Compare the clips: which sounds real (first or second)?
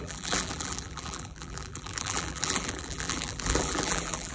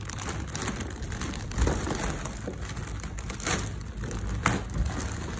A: second